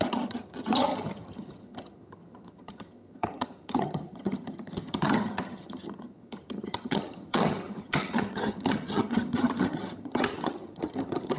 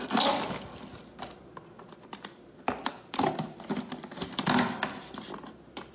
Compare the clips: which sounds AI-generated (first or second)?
first